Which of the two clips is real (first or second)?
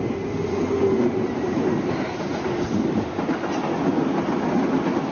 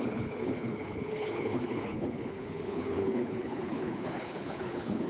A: first